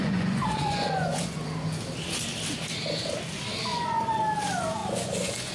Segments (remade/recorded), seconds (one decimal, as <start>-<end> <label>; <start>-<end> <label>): 0.0-1.4 remade; 1.4-3.7 recorded; 3.7-4.2 remade; 4.2-4.8 recorded; 4.8-5.5 remade